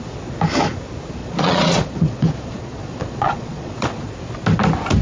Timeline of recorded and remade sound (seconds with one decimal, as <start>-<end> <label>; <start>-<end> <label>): 0.0-1.2 recorded; 1.2-4.1 remade; 4.1-5.0 recorded